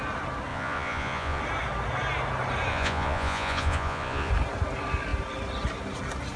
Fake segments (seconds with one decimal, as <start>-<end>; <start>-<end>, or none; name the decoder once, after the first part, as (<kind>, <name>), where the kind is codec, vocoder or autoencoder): 0.5-1.4 (vocoder, Vocos); 2.7-4.3